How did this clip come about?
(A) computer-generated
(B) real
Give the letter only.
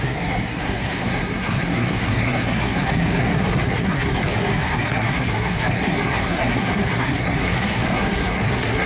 A